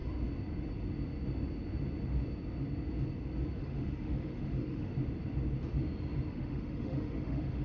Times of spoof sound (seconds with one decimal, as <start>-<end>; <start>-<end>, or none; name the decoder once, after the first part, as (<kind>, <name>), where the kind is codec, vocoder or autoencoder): 3.6-4.9 (autoencoder, DAC-VAE); 6.3-7.6